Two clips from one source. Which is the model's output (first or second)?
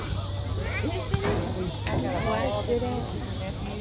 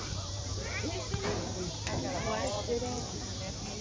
second